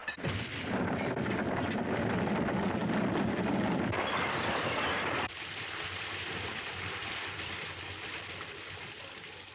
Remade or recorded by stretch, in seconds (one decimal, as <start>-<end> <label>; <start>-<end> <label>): 0.0-9.5 recorded